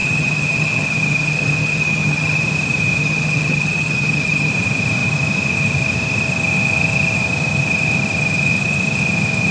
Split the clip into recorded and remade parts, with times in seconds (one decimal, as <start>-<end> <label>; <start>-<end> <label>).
0.0-2.4 remade; 2.4-3.0 recorded; 3.0-4.5 remade; 4.5-9.5 recorded